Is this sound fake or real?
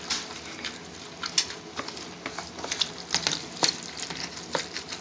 real